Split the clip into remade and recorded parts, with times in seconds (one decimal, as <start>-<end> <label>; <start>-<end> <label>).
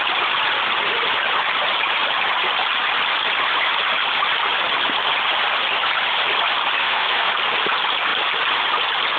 0.0-6.8 recorded; 6.8-7.3 remade; 7.3-9.2 recorded